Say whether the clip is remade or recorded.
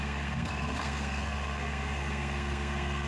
remade